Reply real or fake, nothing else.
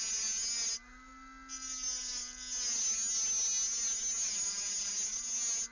real